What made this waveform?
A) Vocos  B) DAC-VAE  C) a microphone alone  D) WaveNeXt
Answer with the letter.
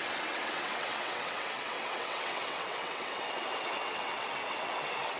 D